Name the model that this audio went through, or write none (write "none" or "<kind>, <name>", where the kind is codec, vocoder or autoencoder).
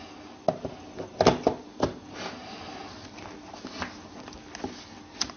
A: none